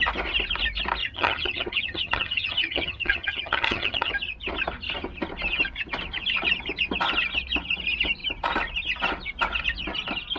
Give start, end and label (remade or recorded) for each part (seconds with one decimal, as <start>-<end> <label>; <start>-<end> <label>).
0.0-1.0 recorded; 1.0-4.1 remade; 4.1-10.4 recorded